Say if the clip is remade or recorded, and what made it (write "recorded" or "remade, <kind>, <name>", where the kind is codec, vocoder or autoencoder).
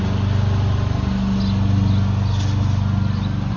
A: recorded